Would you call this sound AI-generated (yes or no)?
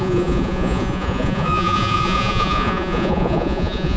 yes